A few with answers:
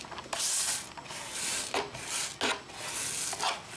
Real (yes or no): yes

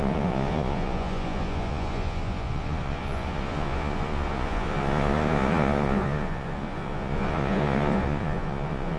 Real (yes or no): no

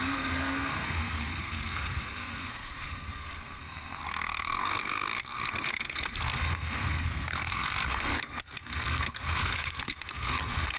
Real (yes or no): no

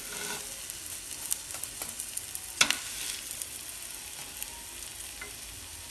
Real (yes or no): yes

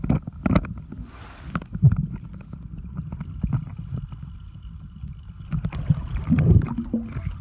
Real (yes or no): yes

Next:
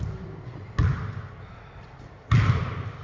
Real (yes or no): yes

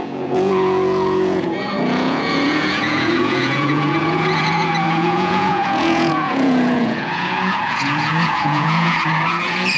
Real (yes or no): no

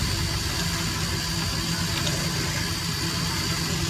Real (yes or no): yes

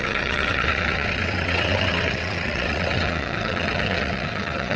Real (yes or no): no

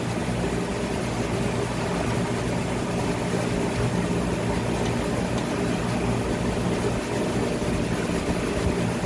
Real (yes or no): yes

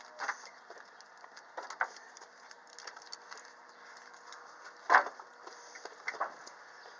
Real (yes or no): yes